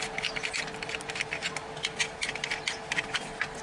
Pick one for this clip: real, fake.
real